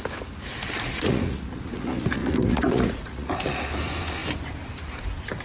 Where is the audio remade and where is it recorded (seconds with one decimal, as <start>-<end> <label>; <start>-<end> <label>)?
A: 0.0-0.5 recorded; 0.5-3.7 remade; 3.7-5.4 recorded